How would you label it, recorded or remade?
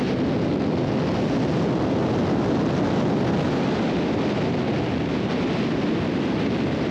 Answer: recorded